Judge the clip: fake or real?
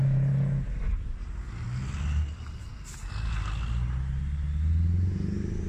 real